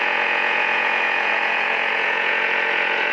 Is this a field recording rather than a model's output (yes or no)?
no